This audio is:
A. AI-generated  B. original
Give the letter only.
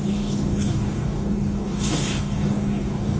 A